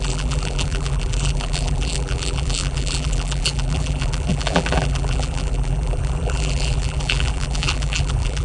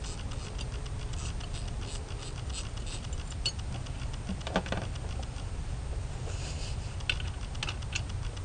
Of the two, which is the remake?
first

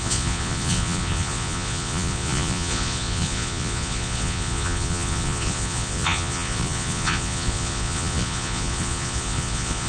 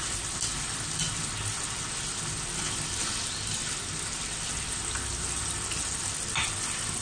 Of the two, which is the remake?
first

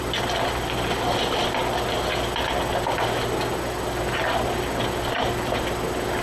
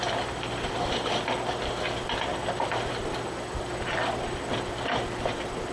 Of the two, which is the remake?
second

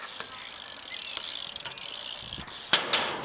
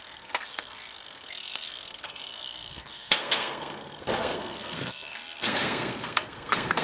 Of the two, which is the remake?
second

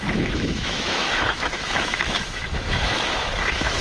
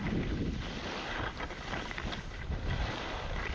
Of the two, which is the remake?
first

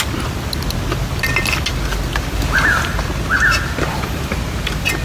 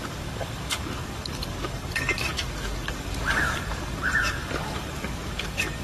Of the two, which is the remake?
second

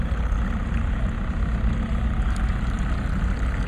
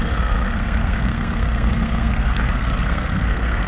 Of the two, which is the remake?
second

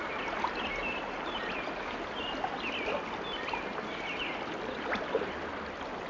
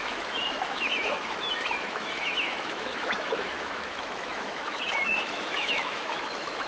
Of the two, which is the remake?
second